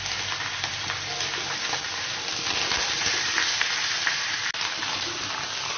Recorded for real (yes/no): yes